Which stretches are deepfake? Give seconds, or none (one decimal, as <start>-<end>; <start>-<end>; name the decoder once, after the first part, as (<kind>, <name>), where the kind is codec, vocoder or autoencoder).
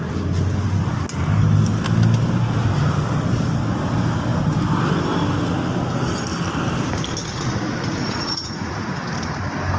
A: 7.3-9.0 (vocoder, Vocos)